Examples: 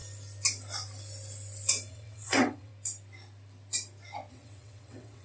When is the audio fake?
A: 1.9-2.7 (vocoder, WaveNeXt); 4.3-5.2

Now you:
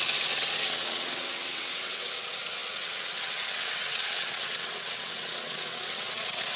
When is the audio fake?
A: 0.0-6.6 (vocoder, WaveNeXt)

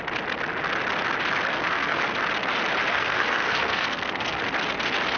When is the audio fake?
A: 1.5-2.0 (codec, SNAC); 2.9-4.4

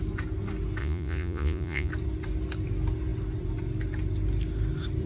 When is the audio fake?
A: 0.8-1.9 (vocoder, Vocos)

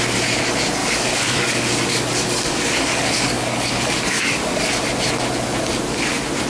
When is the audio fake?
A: 0.8-4.7 (codec, DAC)

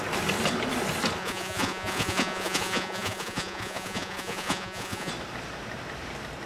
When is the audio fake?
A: 1.2-5.1 (vocoder, Vocos)

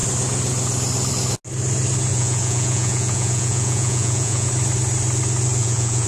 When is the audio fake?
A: 2.1-4.5 (vocoder, Vocos); 5.6-6.1